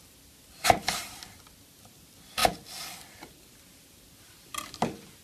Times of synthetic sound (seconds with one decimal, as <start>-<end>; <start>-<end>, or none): none